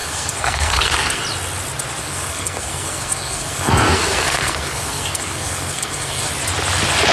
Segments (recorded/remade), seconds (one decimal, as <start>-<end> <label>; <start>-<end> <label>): 0.0-1.2 remade; 1.2-2.0 recorded; 2.0-6.3 remade; 6.3-7.1 recorded